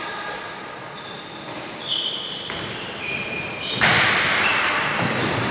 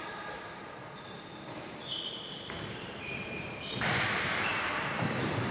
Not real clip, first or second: second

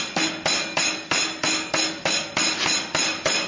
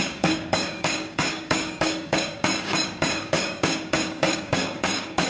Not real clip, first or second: second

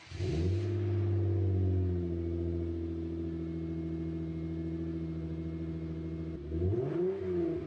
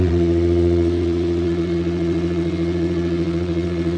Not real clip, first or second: second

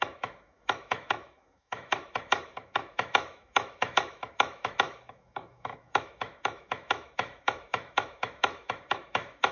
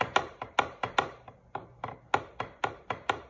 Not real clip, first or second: first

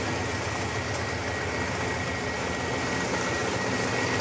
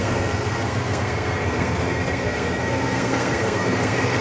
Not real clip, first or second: second